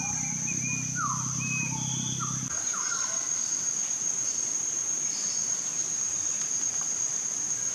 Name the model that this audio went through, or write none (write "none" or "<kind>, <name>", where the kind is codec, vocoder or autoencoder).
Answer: none